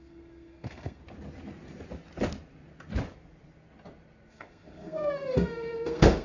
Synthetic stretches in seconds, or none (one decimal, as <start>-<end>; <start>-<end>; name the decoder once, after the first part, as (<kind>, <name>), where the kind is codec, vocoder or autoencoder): 0.0-1.0 (codec, SNAC); 4.3-6.2